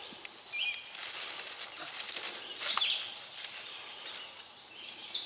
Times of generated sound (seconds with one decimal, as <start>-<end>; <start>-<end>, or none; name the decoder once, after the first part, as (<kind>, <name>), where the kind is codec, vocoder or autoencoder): none